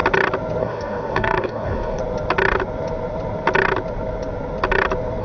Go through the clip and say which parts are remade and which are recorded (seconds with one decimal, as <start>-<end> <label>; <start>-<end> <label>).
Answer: 0.0-0.6 recorded; 0.6-2.0 remade; 2.0-5.2 recorded

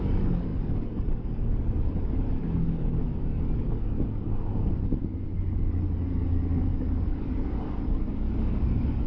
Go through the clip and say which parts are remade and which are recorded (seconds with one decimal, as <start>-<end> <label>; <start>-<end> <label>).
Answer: 0.0-9.1 remade

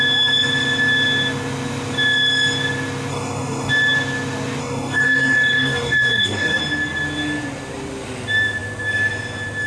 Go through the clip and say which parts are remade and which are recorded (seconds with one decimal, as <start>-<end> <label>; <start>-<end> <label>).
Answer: 0.0-3.1 recorded; 3.1-3.7 remade; 3.7-4.6 recorded; 4.6-6.6 remade; 6.6-9.7 recorded

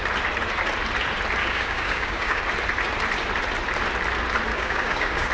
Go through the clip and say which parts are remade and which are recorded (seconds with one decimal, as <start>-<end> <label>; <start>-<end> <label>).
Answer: 0.0-1.4 recorded; 1.4-2.4 remade; 2.4-4.5 recorded; 4.5-5.3 remade

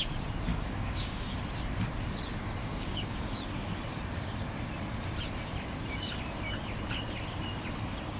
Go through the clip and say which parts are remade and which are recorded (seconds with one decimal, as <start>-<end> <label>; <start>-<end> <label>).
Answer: 0.0-0.5 recorded; 0.5-1.4 remade; 1.4-2.6 recorded; 2.6-3.4 remade; 3.4-8.2 recorded

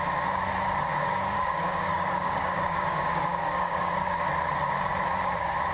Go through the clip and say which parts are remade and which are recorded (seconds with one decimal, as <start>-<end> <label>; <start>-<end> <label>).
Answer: 0.0-0.9 recorded; 0.9-4.3 remade; 4.3-5.7 recorded